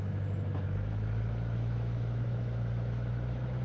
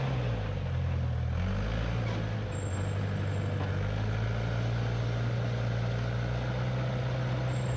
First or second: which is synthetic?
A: first